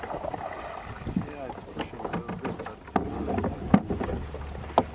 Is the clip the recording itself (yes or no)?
yes